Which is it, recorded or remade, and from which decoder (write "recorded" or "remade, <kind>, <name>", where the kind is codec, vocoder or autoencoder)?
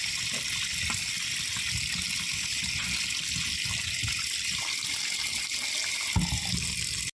recorded